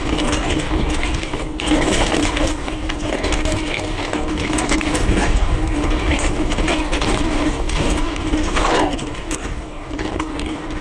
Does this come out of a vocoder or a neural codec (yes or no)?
yes